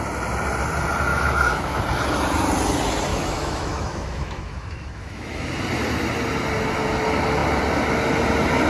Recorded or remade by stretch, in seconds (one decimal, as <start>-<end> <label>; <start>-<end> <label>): 0.0-1.1 recorded; 1.1-1.8 remade; 1.8-3.1 recorded; 3.1-5.5 remade; 5.5-8.7 recorded